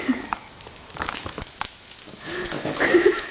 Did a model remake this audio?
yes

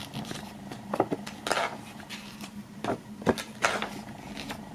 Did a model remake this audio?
no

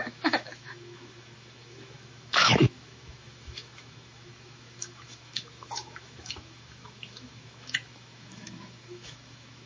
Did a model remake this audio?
yes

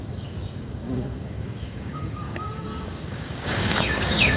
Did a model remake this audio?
yes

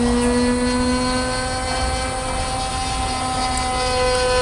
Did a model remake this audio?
no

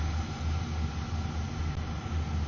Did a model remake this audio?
no